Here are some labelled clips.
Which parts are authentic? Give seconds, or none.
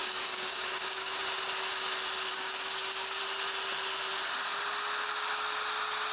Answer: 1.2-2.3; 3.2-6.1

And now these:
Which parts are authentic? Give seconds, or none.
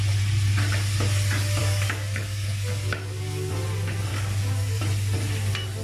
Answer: 0.0-1.6; 3.5-4.1; 4.8-5.8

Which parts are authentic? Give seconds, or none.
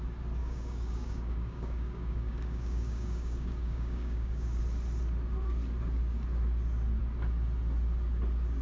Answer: 0.0-0.4; 4.6-8.6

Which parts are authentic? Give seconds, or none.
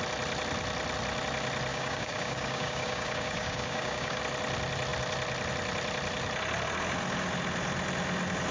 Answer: 0.0-1.7; 4.2-8.5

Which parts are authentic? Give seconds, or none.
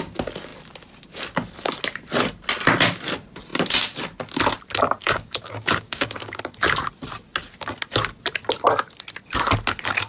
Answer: 0.0-5.0; 6.4-10.1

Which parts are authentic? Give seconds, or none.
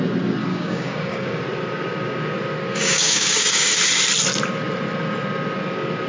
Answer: 0.0-0.5; 1.4-2.7; 3.8-6.1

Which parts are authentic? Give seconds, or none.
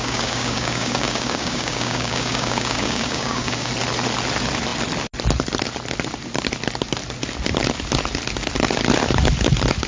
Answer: 3.7-9.9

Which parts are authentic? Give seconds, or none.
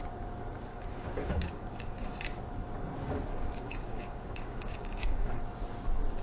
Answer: 0.0-0.7; 2.1-3.3; 5.4-6.2